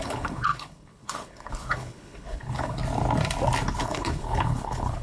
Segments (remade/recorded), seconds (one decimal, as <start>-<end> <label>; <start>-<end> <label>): 0.0-2.8 remade; 2.8-3.8 recorded; 3.8-5.0 remade